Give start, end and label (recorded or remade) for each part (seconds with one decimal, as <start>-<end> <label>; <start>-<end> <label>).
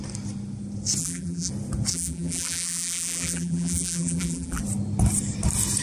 0.0-1.0 recorded; 1.0-1.5 remade; 1.5-1.9 recorded; 1.9-4.6 remade; 4.6-5.8 recorded